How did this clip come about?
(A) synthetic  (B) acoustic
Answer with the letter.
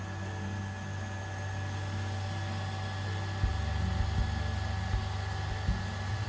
B